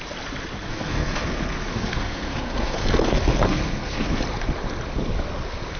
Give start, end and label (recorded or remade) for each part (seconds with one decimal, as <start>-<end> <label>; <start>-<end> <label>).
0.0-0.7 recorded; 0.7-4.2 remade; 4.2-5.8 recorded